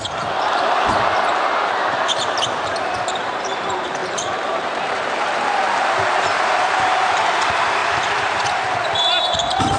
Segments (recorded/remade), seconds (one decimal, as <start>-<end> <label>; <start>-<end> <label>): 0.0-9.8 remade